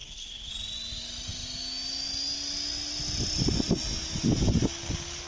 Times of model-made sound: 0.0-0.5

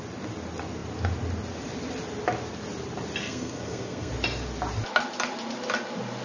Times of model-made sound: 3.2-4.1

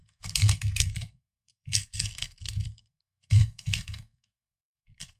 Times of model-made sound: 0.0-5.2

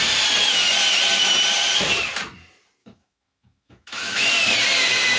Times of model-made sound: 2.8-4.3